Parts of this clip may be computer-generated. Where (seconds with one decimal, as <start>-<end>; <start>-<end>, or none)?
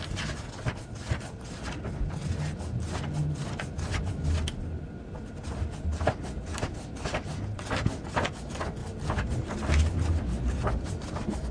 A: none